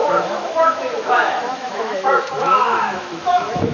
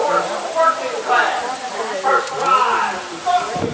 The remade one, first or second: first